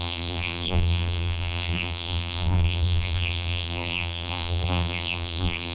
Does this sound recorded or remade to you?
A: remade